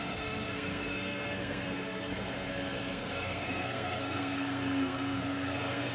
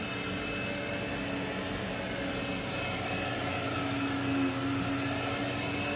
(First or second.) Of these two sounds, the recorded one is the second